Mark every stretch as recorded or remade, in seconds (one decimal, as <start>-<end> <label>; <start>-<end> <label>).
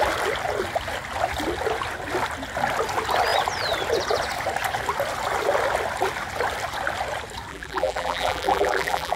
0.0-7.5 recorded; 7.5-9.2 remade